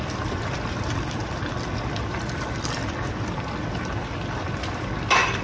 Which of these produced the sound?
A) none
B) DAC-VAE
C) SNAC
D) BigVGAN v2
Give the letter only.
D